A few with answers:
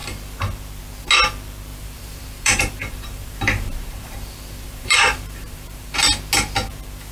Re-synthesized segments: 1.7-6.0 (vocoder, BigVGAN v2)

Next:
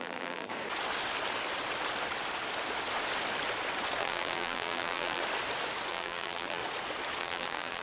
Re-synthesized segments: 0.0-0.5 (vocoder, BigVGAN v2); 4.0-5.2; 5.9-6.6; 7.2-7.8

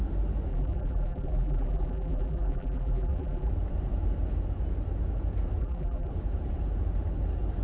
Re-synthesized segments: 0.5-3.5 (vocoder, BigVGAN v2); 5.6-6.1

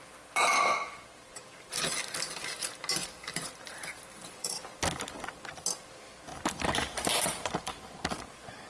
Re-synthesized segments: 3.2-4.6 (vocoder, BigVGAN v2)

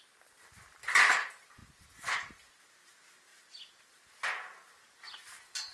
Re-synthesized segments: none

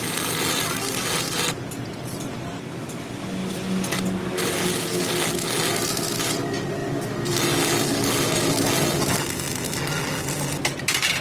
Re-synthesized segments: none

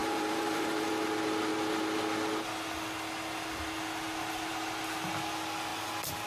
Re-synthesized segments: 0.0-0.9 (vocoder, BigVGAN v2)

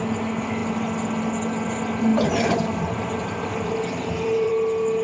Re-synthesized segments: 2.1-4.5 (vocoder, BigVGAN v2)